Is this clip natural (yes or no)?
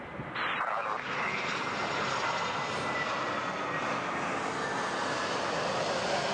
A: yes